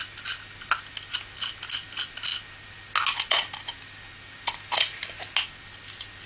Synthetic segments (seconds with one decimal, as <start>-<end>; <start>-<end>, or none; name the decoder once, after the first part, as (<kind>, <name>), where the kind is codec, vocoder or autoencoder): none